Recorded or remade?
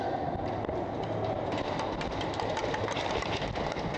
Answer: recorded